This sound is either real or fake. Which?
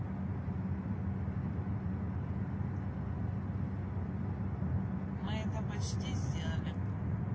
real